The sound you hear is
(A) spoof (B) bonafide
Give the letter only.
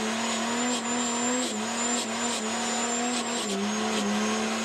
B